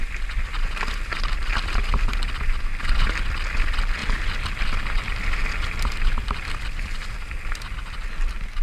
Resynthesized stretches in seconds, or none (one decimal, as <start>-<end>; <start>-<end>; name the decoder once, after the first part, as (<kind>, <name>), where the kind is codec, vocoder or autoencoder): none